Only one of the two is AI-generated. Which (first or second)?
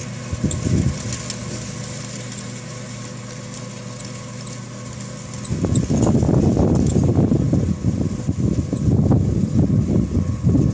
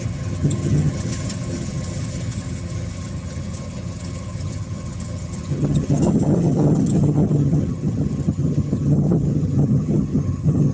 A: second